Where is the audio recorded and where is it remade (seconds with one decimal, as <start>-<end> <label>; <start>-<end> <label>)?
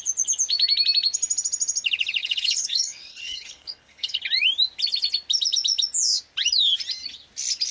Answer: 0.0-2.2 recorded; 2.2-4.2 remade; 4.2-7.7 recorded